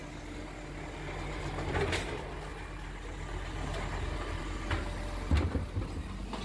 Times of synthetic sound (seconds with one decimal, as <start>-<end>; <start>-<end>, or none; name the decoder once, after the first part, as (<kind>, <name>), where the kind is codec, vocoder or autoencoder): none